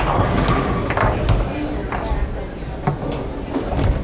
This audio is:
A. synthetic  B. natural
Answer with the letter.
B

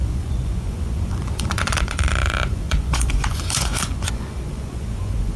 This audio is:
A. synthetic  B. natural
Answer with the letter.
A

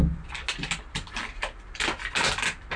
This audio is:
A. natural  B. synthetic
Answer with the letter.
A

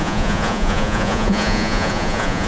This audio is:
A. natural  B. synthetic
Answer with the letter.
B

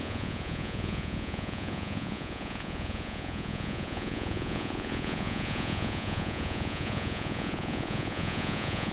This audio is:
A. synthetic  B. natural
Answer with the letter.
A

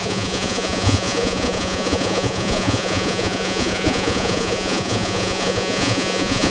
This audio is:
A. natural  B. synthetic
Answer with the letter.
B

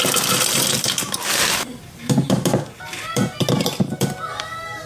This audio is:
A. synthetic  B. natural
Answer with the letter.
B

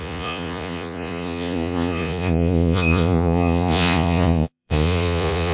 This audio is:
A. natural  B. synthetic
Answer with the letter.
B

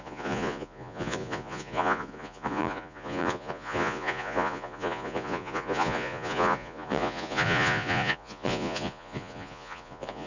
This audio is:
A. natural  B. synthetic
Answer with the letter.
B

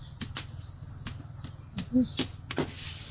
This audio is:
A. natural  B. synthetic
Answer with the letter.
A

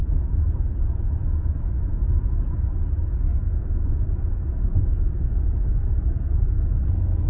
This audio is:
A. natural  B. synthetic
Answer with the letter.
B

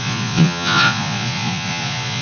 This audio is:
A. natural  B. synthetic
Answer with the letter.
B